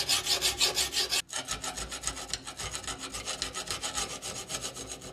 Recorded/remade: recorded